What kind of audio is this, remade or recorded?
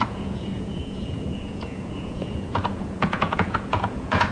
remade